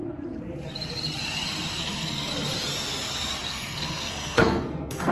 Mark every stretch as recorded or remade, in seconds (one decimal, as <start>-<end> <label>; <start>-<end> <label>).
0.0-1.7 recorded; 1.7-2.3 remade; 2.3-3.5 recorded; 3.5-5.1 remade